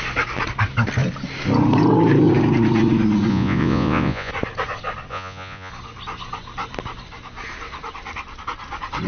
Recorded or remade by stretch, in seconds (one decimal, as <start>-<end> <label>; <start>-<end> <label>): 0.0-3.3 recorded; 3.3-4.3 remade; 4.3-5.1 recorded; 5.1-5.7 remade; 5.7-9.1 recorded